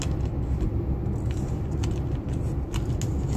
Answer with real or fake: real